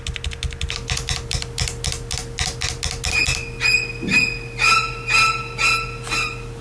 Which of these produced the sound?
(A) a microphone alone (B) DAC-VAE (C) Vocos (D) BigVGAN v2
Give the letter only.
A